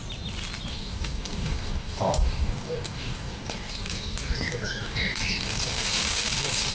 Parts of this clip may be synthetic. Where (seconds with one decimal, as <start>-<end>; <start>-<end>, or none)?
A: 0.7-6.7